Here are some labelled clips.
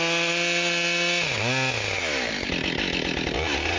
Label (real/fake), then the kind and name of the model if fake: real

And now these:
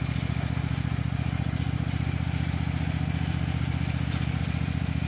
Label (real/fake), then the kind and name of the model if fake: real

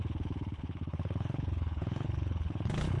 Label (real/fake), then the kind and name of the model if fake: fake, codec, HILCodec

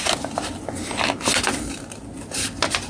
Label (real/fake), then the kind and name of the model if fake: real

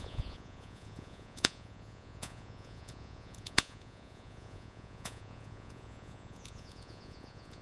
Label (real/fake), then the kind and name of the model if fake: fake, vocoder, Vocos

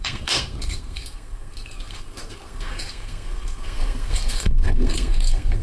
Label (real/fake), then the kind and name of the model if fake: fake, codec, SNAC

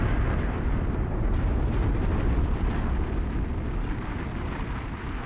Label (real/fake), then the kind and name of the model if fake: real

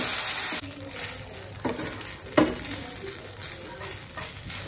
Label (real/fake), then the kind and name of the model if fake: real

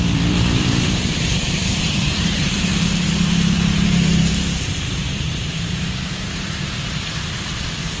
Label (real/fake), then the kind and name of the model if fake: fake, vocoder, BigVGAN v2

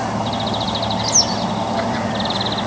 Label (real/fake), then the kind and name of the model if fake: real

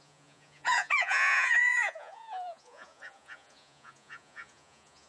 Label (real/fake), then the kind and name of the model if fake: fake, vocoder, Vocos